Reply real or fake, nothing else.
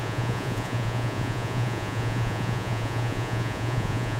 fake